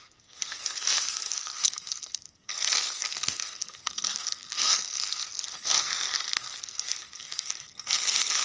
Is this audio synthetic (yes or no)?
yes